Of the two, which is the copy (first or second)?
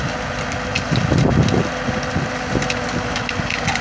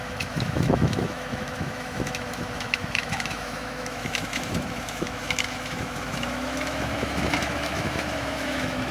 second